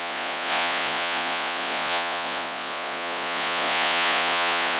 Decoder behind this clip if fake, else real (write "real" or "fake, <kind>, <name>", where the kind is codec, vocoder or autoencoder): fake, vocoder, Vocos